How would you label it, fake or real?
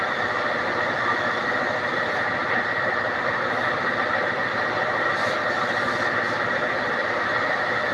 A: real